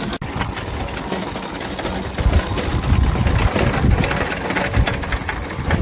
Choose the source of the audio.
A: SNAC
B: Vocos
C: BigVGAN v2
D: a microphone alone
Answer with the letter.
D